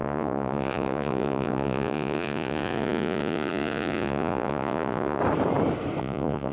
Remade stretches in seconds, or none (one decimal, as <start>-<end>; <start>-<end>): 0.0-5.2; 6.0-6.5